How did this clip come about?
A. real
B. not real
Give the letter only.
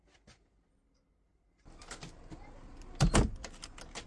A